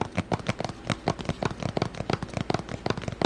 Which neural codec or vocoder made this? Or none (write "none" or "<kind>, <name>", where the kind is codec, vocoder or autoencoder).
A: none